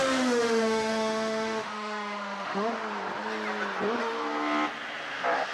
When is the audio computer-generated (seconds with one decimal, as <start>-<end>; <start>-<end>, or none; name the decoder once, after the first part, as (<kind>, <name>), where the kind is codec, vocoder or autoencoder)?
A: 0.0-2.7 (autoencoder, DAC-VAE)